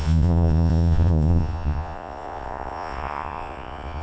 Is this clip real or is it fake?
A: fake